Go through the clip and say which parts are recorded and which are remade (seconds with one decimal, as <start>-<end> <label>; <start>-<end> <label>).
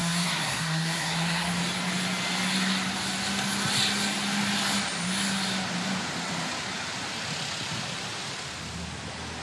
0.0-1.5 remade; 1.5-9.4 recorded